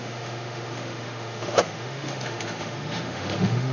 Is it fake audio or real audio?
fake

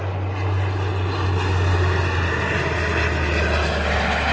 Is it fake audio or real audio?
real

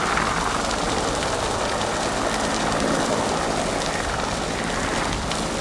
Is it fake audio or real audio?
real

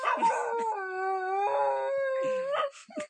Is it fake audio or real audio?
real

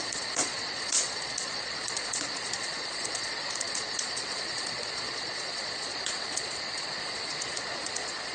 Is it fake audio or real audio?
fake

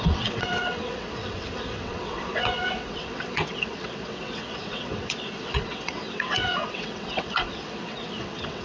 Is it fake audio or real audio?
fake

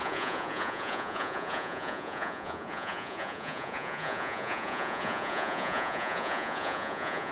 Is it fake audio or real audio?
fake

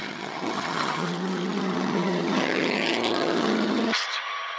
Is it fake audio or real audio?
fake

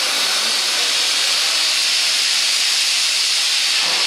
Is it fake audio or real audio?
fake